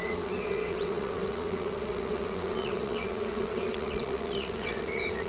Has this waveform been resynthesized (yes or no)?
yes